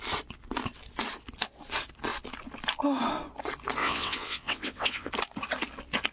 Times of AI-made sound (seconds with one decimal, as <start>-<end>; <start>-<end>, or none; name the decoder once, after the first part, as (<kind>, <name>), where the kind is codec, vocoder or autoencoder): 3.8-5.1 (vocoder, WaveNeXt)